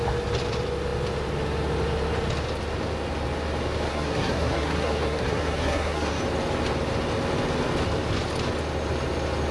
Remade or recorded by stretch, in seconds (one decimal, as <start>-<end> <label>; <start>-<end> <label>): 0.0-3.9 recorded; 3.9-6.2 remade; 6.2-9.5 recorded